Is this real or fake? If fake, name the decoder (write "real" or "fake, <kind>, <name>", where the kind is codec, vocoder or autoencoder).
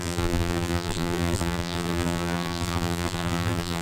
fake, vocoder, BigVGAN v2